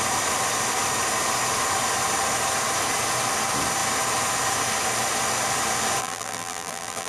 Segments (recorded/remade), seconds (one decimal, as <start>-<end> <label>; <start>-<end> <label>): 0.0-6.0 recorded; 6.0-7.1 remade